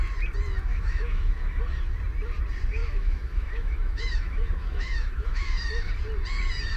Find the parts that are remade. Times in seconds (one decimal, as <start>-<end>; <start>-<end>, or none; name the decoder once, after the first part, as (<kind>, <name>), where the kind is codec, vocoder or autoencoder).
0.7-1.6 (autoencoder, DAC-VAE); 2.8-5.9